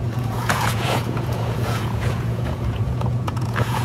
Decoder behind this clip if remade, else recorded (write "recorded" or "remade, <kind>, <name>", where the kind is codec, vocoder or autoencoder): remade, vocoder, Vocos